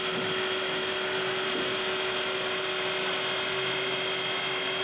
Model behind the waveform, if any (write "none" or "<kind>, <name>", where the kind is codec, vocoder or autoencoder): none